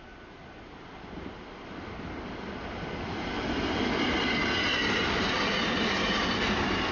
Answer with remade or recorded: recorded